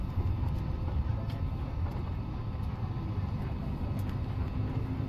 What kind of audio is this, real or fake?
real